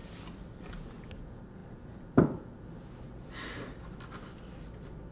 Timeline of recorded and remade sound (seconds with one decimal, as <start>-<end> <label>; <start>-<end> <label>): 0.0-5.1 recorded